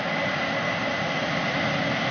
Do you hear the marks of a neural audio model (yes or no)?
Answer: no